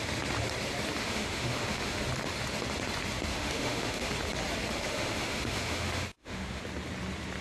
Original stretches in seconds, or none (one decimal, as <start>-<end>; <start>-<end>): 0.0-1.0; 2.0-3.3; 4.1-4.7; 6.6-7.4